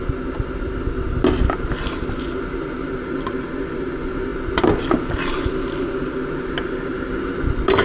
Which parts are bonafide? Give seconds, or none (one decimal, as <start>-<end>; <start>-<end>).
0.0-7.8